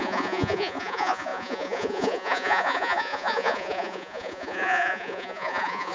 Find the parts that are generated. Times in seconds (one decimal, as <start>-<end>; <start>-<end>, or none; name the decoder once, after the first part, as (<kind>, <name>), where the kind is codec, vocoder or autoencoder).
0.0-5.9 (vocoder, Vocos)